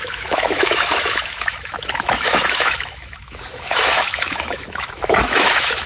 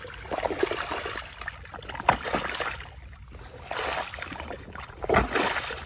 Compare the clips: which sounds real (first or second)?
second